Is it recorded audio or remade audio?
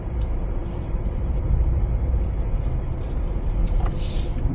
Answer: remade